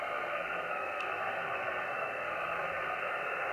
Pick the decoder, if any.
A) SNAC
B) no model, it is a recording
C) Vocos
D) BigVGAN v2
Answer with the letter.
A